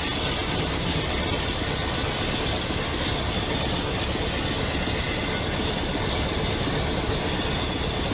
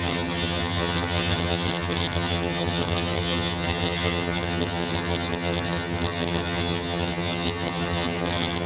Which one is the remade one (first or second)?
second